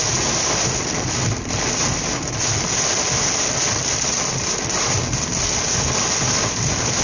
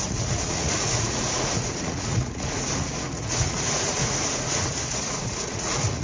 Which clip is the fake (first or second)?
second